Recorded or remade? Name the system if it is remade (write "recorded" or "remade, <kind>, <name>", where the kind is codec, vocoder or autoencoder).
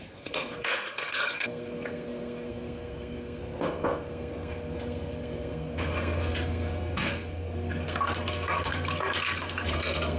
remade, codec, SNAC